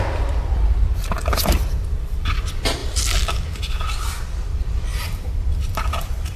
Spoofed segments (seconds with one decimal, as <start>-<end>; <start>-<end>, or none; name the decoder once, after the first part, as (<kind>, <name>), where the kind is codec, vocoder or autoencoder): 0.0-6.4 (vocoder, BigVGAN v2)